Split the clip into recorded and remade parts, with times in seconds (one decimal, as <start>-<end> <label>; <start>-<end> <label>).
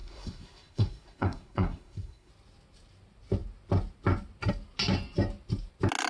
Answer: 0.0-2.3 remade; 2.3-6.1 recorded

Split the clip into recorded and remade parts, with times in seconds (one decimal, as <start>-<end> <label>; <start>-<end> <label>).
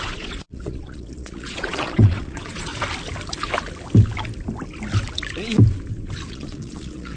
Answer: 0.0-2.7 remade; 2.7-6.3 recorded; 6.3-7.2 remade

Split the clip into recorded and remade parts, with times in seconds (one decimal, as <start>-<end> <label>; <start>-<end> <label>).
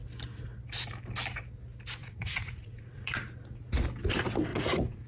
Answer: 0.0-2.0 recorded; 2.0-3.1 remade; 3.1-4.5 recorded; 4.5-5.1 remade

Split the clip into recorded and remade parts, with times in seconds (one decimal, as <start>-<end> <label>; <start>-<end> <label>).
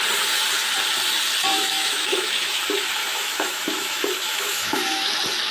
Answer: 0.0-1.5 recorded; 1.5-2.6 remade; 2.6-3.0 recorded; 3.0-5.1 remade; 5.1-5.5 recorded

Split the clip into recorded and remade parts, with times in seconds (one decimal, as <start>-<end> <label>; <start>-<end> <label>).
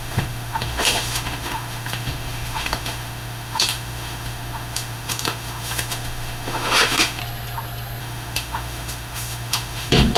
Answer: 0.0-7.2 remade; 7.2-8.0 recorded; 8.0-10.2 remade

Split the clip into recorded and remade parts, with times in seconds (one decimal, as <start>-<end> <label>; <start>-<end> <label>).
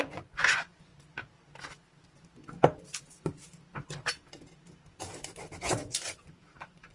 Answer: 0.0-0.9 remade; 0.9-3.0 recorded; 3.0-3.4 remade; 3.4-5.6 recorded; 5.6-6.9 remade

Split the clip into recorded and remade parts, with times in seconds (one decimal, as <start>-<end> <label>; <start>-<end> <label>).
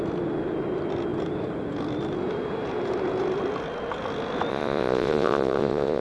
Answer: 0.0-4.5 recorded; 4.5-6.0 remade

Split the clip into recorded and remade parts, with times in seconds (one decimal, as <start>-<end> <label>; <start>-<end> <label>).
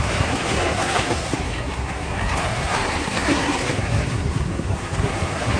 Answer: 0.0-5.6 remade